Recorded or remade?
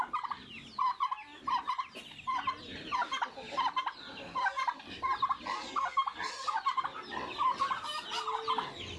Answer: recorded